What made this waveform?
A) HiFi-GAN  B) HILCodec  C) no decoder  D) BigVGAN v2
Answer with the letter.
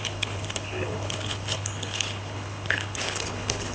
B